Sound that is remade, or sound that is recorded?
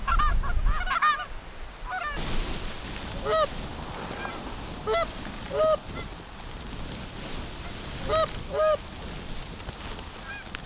recorded